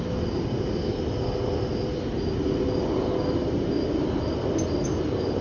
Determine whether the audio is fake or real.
real